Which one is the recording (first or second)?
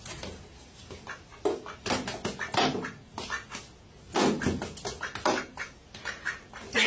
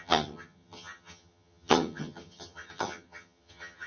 first